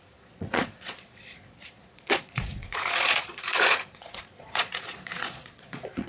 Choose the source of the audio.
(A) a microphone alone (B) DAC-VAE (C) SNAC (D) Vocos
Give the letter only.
D